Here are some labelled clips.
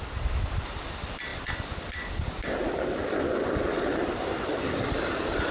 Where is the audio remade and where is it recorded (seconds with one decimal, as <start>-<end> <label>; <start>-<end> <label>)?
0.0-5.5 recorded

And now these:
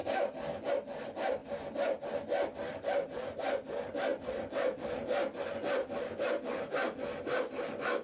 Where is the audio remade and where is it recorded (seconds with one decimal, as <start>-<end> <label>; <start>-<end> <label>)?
0.0-8.0 recorded

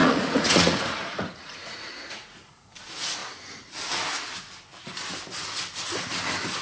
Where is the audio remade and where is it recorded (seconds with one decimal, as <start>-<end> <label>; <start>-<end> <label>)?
0.0-2.7 remade; 2.7-6.6 recorded

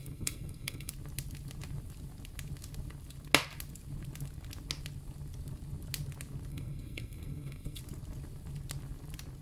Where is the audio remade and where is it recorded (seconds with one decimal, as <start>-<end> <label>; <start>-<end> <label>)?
0.0-0.9 remade; 0.9-6.5 recorded; 6.5-7.8 remade; 7.8-9.4 recorded

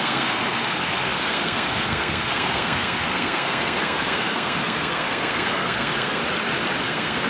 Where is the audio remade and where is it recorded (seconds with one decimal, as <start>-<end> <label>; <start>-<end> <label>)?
0.0-6.2 remade; 6.2-6.8 recorded; 6.8-7.3 remade

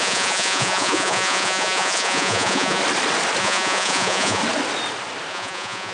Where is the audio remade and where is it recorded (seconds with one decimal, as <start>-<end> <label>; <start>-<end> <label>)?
0.0-2.8 remade; 2.8-3.4 recorded; 3.4-4.4 remade; 4.4-5.3 recorded; 5.3-5.9 remade

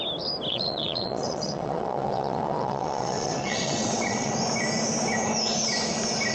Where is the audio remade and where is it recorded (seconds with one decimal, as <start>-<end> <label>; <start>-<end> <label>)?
0.0-0.5 recorded; 0.5-4.3 remade; 4.3-6.3 recorded